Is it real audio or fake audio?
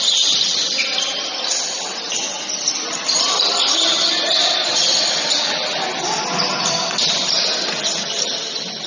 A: real